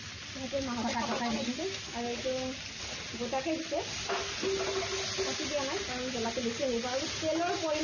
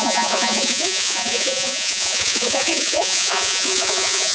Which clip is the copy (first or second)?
second